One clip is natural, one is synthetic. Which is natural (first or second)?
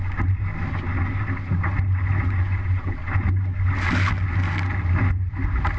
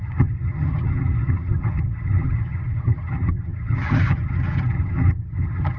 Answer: first